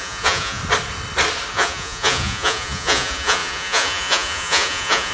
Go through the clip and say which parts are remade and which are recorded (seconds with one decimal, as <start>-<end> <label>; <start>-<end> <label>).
0.0-0.6 remade; 0.6-1.5 recorded; 1.5-5.1 remade